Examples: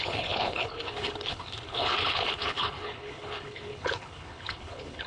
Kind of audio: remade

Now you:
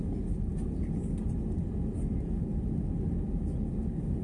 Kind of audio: recorded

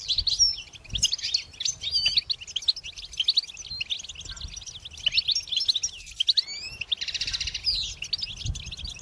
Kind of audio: recorded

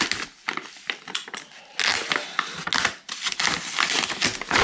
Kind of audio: recorded